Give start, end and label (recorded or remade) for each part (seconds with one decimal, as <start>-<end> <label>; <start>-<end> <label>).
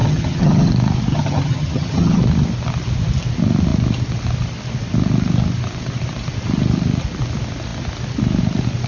0.0-0.7 remade; 0.7-1.1 recorded; 1.1-2.2 remade; 2.2-8.9 recorded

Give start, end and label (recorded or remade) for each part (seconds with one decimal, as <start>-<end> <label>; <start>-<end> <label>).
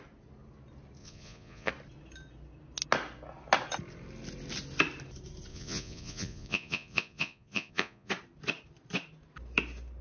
0.0-1.0 recorded; 1.0-1.7 remade; 1.7-5.5 recorded; 5.5-8.1 remade; 8.1-10.0 recorded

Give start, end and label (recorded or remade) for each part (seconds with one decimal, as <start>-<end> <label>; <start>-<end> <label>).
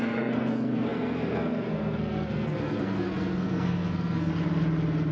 0.0-4.3 remade; 4.3-5.1 recorded